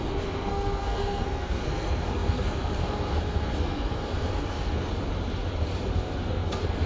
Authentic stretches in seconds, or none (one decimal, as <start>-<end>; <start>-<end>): 4.9-5.8